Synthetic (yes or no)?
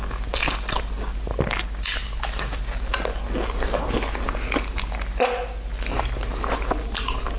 no